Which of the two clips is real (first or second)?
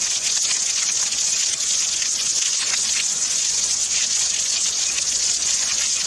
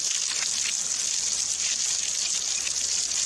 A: second